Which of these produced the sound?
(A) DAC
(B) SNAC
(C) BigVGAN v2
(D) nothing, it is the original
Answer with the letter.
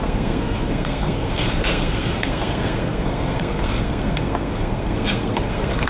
B